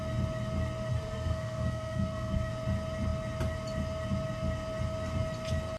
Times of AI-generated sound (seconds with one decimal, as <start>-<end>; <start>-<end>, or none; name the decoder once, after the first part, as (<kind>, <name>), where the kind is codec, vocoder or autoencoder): 0.9-2.5 (codec, SNAC)